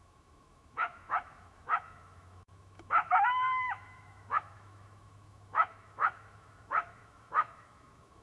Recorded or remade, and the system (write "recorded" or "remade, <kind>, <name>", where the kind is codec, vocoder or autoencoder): remade, autoencoder, DAC-VAE